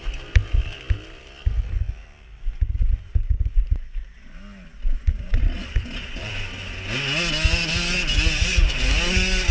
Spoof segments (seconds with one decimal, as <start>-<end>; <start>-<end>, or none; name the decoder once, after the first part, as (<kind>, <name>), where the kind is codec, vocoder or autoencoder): 5.4-6.3 (vocoder, Vocos)